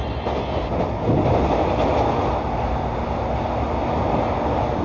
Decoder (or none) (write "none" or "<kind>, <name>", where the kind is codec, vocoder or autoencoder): none